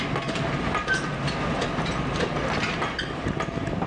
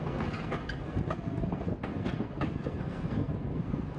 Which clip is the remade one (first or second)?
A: second